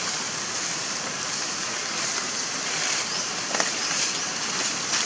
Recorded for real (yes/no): yes